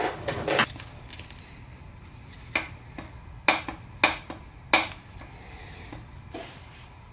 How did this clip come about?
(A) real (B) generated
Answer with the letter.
A